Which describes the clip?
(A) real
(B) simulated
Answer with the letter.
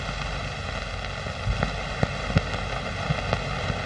A